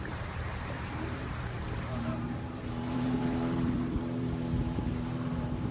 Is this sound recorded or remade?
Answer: remade